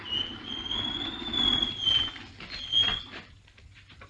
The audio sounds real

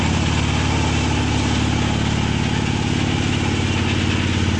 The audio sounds real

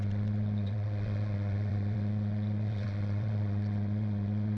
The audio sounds fake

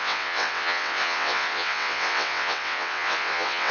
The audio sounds fake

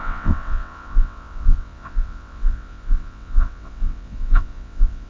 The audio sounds fake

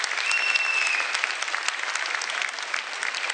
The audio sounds real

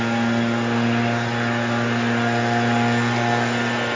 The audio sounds real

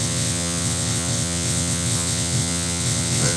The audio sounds fake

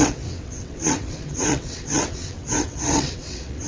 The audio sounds fake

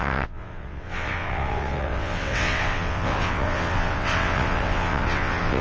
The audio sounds fake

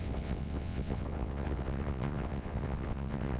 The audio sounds fake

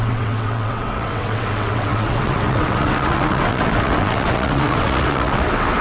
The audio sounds fake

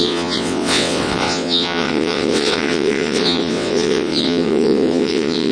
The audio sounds fake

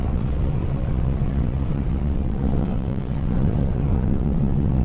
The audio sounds fake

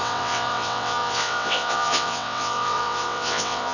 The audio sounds fake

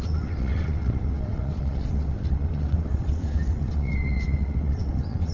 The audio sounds fake